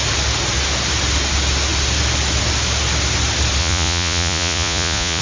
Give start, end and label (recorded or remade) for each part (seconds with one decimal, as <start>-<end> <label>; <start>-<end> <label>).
0.0-3.6 recorded; 3.6-5.2 remade